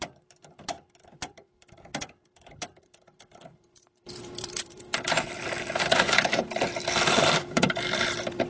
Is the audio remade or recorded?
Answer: remade